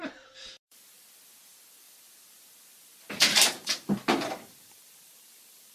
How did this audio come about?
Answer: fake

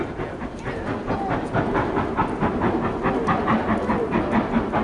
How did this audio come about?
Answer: real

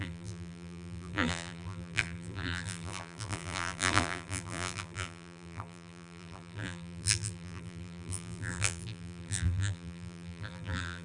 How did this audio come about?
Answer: fake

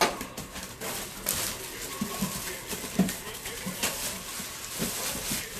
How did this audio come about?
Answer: fake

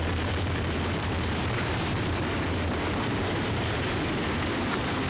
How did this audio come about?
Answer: fake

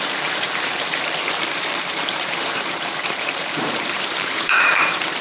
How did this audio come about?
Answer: fake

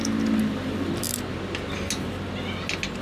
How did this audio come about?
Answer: real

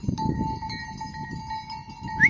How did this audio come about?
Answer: real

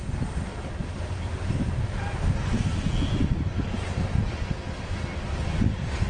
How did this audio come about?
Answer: real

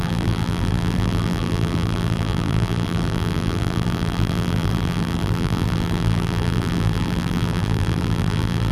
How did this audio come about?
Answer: fake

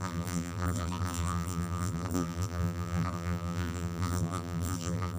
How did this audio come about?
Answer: fake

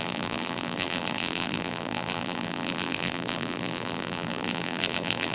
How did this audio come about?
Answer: fake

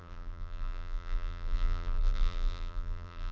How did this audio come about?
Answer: fake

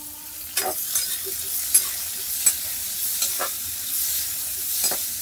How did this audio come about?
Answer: real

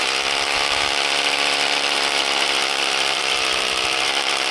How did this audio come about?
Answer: fake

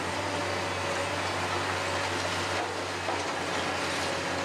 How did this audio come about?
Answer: real